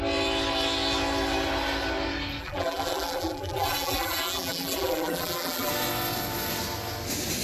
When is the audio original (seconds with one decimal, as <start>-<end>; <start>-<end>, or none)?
0.0-2.4; 5.7-7.4